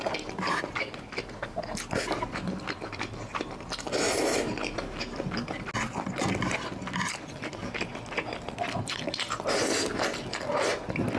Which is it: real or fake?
real